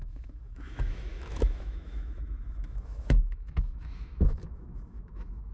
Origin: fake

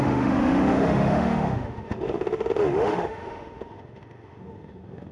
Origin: fake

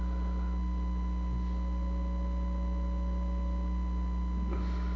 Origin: real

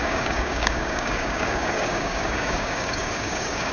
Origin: fake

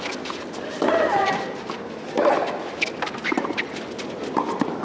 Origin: real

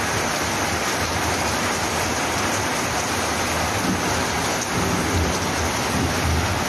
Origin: real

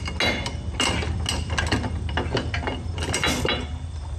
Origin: real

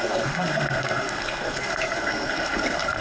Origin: fake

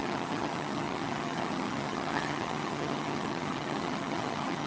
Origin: fake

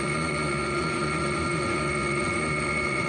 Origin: fake